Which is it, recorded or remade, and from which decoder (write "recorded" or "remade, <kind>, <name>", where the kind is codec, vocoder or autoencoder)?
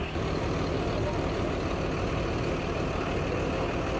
recorded